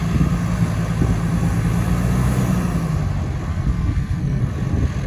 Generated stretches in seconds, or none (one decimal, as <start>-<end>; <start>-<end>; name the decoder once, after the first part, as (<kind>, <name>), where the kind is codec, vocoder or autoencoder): 3.5-4.4 (codec, SNAC)